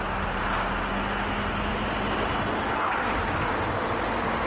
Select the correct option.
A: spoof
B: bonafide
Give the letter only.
B